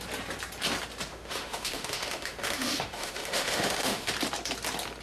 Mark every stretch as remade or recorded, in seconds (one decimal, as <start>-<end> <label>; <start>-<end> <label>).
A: 0.0-1.1 recorded; 1.1-4.1 remade; 4.1-5.0 recorded